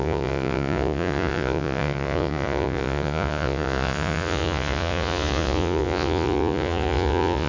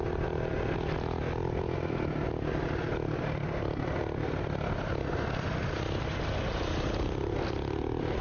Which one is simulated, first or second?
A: first